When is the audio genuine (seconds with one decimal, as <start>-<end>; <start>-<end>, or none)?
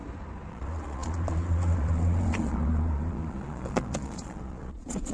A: 0.0-0.5